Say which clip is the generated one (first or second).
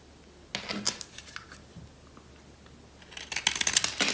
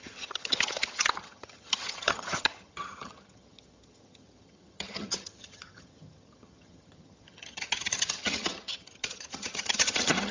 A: second